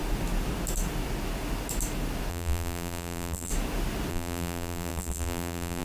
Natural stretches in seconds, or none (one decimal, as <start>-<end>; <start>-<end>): 0.0-2.3; 3.5-4.1